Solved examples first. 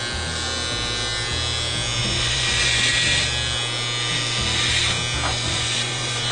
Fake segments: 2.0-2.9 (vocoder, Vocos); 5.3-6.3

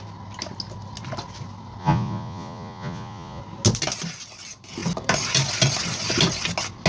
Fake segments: 1.8-3.4 (vocoder, Vocos)